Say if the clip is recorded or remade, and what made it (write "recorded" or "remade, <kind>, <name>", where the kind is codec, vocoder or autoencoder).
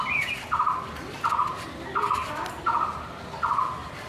recorded